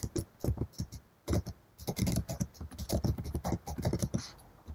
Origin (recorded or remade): recorded